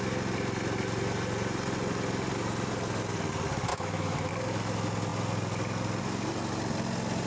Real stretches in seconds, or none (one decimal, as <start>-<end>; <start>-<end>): 0.0-3.7; 4.3-7.3